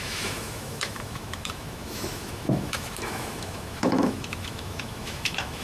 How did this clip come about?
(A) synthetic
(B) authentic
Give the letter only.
A